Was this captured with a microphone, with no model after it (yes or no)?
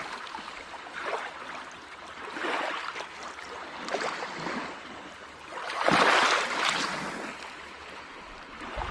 yes